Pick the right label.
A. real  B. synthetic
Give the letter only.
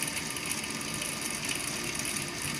A